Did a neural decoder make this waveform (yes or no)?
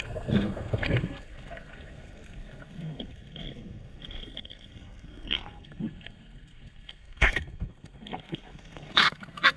yes